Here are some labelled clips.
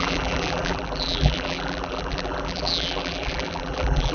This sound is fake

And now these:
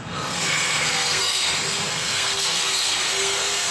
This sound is fake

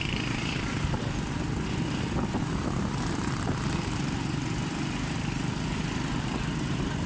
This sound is real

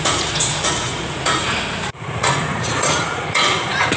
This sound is fake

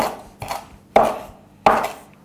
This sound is real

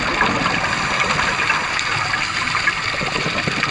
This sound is real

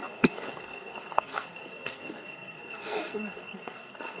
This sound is fake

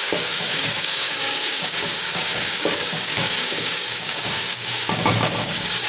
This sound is fake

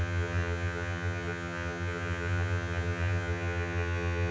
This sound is fake